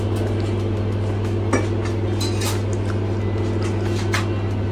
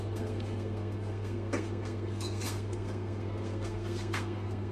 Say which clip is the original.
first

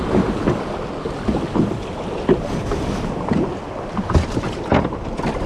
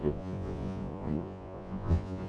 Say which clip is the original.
first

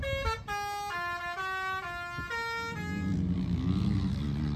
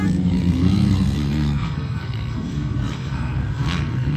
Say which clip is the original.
first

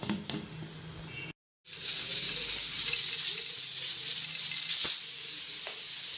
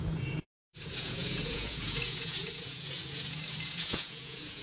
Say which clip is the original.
first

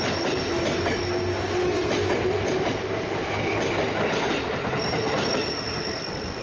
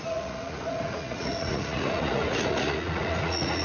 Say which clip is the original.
first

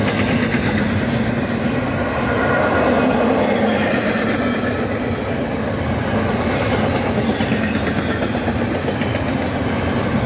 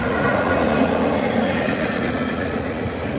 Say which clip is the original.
first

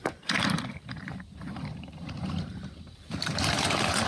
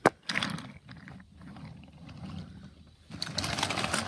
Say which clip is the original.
second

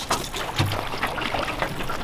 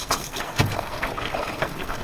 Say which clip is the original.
first